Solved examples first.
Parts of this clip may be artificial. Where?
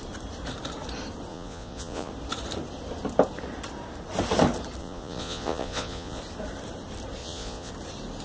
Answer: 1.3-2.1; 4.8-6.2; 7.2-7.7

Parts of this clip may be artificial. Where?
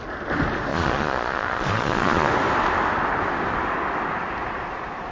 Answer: 0.7-2.3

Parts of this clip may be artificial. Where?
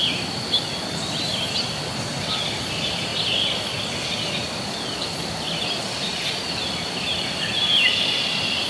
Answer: none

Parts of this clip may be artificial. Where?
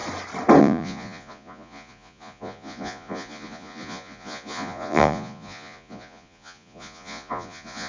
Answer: 0.6-7.9